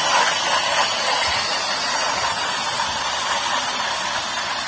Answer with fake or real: real